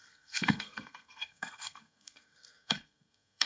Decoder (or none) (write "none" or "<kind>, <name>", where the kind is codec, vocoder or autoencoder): codec, SNAC